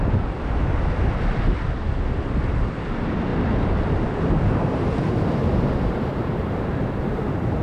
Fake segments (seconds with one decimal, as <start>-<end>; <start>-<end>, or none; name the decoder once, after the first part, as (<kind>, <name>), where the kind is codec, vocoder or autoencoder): none